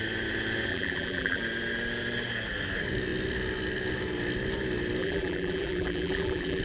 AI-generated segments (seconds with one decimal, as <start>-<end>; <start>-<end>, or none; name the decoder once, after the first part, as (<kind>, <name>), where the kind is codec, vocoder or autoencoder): 0.7-1.4 (vocoder, BigVGAN v2); 5.0-6.6